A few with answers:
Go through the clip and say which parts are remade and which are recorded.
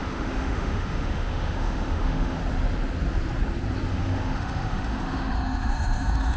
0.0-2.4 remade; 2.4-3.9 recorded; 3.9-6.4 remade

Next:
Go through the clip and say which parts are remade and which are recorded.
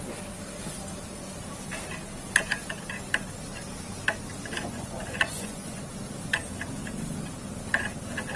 0.0-4.6 recorded; 4.6-5.8 remade; 5.8-8.4 recorded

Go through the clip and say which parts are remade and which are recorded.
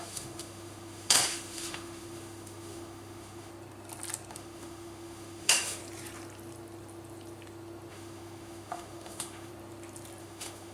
0.0-3.5 remade; 3.5-4.3 recorded; 4.3-5.8 remade; 5.8-7.9 recorded; 7.9-9.5 remade; 9.5-10.2 recorded; 10.2-10.7 remade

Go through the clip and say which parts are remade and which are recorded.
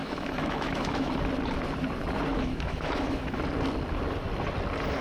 0.0-1.1 remade; 1.1-2.3 recorded; 2.3-3.4 remade; 3.4-5.0 recorded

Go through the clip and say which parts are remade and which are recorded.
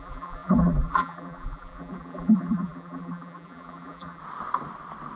0.0-4.2 remade; 4.2-5.2 recorded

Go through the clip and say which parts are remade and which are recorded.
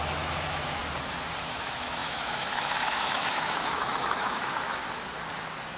0.0-0.8 remade; 0.8-1.5 recorded; 1.5-4.8 remade; 4.8-5.8 recorded